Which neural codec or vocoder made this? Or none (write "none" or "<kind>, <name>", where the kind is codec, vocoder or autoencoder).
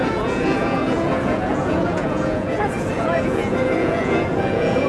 vocoder, Vocos